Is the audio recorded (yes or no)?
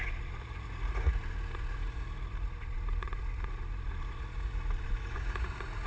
no